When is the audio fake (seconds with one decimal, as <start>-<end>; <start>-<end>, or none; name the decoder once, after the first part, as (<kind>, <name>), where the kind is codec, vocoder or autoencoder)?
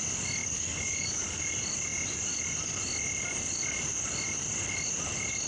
0.4-1.4 (codec, DAC)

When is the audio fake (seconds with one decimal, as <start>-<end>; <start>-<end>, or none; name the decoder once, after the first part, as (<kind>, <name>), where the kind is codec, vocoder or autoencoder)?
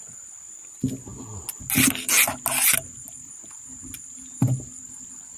none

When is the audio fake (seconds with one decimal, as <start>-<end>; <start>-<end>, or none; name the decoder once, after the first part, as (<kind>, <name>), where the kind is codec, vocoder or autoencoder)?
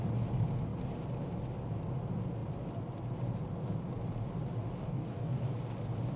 4.8-5.5 (codec, DAC)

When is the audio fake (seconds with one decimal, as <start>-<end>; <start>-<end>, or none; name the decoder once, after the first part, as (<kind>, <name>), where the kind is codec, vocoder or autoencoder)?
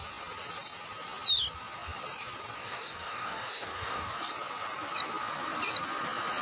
2.6-4.2 (codec, DAC)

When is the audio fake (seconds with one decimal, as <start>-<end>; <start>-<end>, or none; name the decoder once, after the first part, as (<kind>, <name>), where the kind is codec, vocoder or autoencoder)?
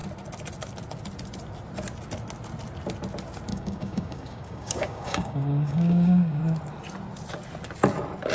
3.5-6.4 (codec, DAC)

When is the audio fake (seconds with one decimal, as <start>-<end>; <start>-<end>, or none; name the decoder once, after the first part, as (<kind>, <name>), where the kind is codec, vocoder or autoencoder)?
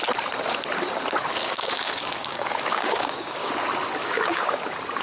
1.4-3.5 (codec, DAC); 4.0-4.6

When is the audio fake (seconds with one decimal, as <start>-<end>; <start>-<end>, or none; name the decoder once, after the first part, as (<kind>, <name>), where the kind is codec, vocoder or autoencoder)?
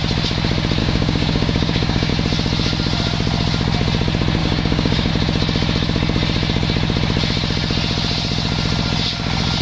0.8-2.1 (codec, DAC); 4.4-5.1